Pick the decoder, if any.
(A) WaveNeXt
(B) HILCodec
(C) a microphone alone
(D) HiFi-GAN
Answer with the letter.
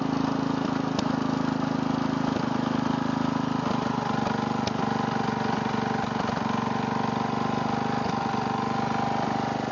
C